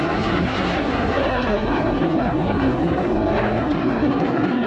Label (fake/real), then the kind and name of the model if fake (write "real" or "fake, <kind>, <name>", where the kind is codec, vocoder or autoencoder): fake, codec, SNAC